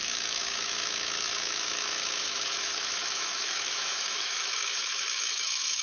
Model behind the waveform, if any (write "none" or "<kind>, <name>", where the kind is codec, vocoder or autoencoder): autoencoder, DAC-VAE